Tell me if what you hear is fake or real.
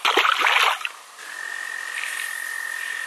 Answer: real